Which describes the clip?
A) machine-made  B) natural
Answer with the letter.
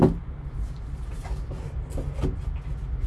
B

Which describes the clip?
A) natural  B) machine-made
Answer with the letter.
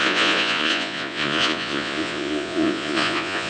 B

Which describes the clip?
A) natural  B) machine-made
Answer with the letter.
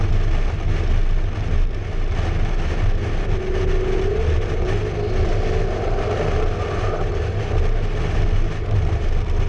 A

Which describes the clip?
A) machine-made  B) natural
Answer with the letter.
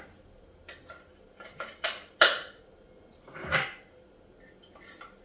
B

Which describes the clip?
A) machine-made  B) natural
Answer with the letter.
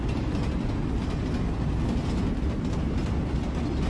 B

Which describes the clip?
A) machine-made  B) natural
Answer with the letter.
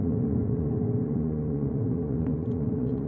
A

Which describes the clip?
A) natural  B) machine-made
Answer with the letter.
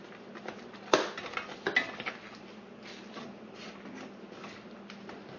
A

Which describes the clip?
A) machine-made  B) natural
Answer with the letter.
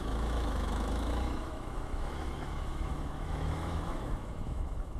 A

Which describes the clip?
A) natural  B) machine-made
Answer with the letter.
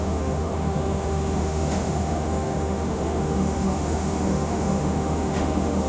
B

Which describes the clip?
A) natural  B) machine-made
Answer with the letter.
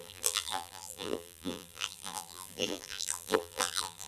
B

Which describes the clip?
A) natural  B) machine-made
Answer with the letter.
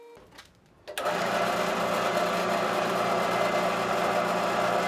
A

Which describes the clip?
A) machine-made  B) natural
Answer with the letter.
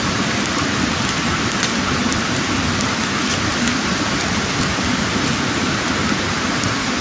B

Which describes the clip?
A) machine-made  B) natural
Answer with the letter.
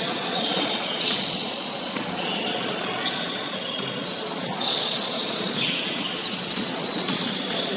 A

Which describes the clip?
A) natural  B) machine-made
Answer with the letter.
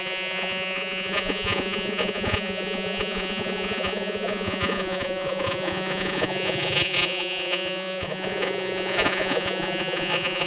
B